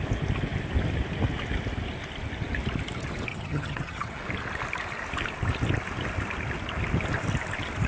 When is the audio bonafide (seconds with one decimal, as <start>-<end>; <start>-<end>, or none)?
0.0-3.3; 4.2-7.9